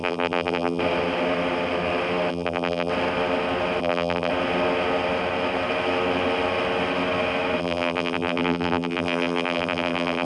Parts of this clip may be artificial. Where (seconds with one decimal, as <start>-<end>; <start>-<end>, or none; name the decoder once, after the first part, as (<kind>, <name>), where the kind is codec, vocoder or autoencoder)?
0.0-0.8 (vocoder, BigVGAN v2); 2.3-2.9; 3.8-4.3; 7.6-10.2